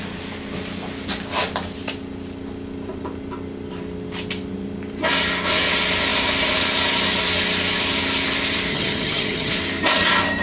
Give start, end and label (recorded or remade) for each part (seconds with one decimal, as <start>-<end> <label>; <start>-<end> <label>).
0.0-8.7 recorded; 8.7-9.5 remade; 9.5-10.4 recorded